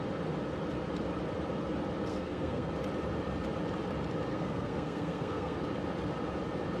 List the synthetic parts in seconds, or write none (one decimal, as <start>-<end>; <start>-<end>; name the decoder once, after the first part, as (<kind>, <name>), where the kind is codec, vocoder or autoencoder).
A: 2.1-2.7 (codec, SNAC); 4.3-5.6